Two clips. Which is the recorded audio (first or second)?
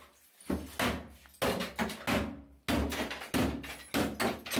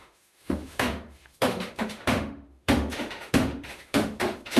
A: first